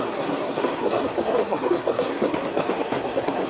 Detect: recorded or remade remade